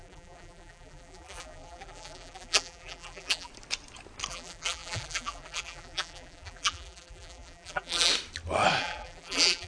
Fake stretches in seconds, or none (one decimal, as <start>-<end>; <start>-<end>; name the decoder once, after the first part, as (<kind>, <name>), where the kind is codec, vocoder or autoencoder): 0.0-3.5 (vocoder, BigVGAN v2); 4.3-8.1; 8.8-9.7